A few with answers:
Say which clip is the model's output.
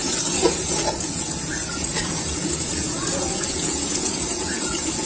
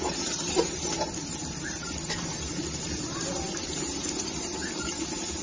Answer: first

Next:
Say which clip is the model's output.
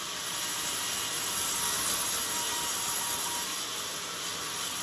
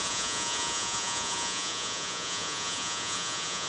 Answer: second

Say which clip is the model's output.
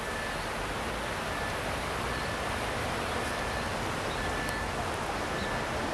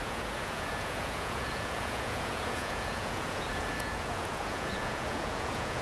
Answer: second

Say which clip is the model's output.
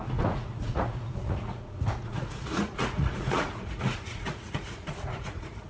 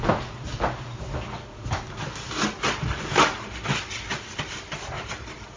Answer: first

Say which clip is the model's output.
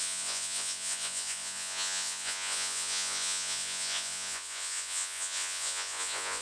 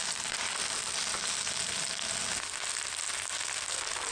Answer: first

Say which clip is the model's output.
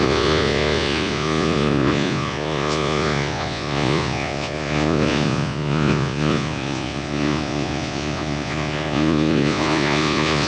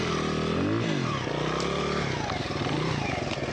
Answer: first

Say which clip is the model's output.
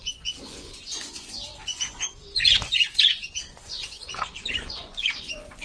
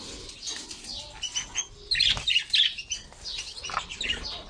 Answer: first